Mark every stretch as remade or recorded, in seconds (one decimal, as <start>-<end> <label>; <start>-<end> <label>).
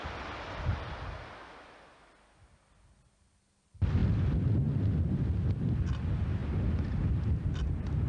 0.0-8.1 recorded